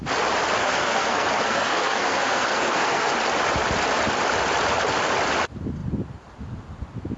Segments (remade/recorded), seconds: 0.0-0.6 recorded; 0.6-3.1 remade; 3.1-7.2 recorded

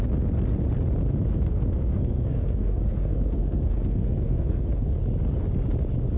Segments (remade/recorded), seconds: 0.0-1.3 recorded; 1.3-5.0 remade; 5.0-6.2 recorded

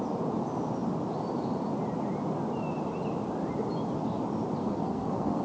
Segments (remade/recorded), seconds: 0.0-4.6 recorded; 4.6-5.4 remade

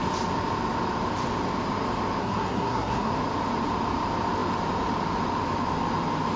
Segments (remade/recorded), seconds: 0.0-2.2 recorded; 2.2-3.1 remade; 3.1-6.4 recorded